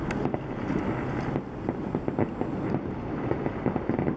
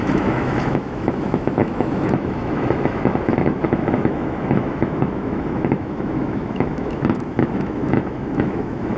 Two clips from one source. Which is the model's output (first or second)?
second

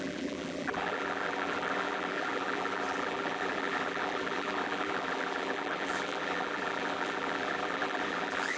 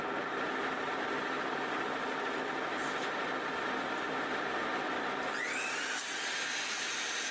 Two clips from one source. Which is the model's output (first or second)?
first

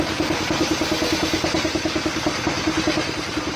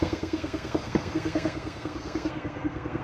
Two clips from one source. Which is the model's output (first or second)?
second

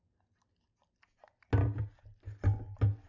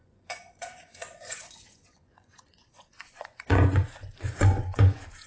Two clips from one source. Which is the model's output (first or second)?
second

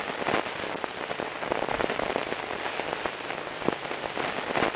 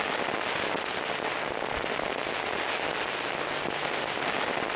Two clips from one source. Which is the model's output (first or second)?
first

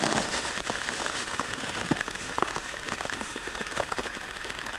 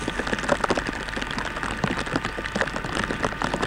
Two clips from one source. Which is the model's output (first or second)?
first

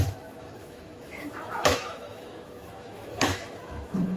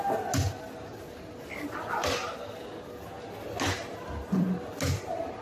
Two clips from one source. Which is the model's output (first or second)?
first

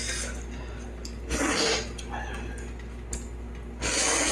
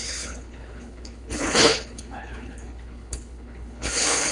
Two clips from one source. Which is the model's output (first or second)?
second